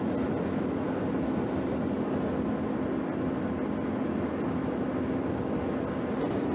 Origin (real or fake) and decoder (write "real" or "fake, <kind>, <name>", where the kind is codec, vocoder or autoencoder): real